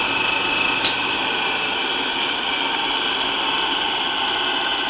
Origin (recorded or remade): recorded